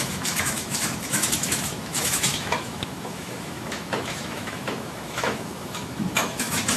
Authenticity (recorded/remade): remade